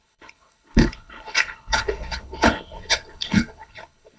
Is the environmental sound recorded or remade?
remade